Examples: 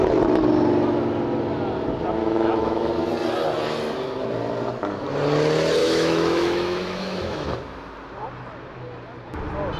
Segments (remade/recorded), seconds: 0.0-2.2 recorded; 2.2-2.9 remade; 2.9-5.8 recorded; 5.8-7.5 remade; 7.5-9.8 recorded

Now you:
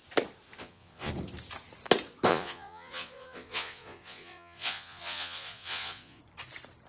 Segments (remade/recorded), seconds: 0.0-0.6 recorded; 0.6-1.1 remade; 1.1-2.3 recorded; 2.3-6.2 remade; 6.2-6.9 recorded

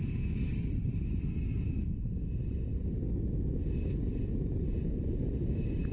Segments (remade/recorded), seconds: 0.0-5.9 recorded